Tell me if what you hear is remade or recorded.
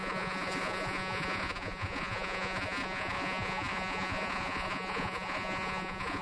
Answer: remade